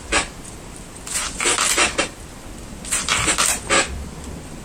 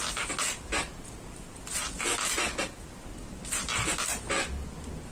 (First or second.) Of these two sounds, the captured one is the second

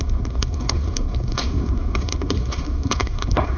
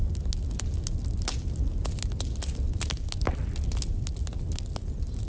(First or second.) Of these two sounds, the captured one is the second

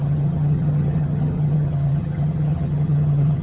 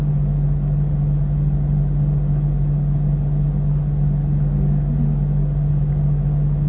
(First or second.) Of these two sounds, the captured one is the second